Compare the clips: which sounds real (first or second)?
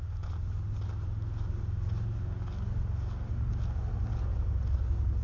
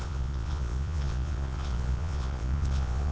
first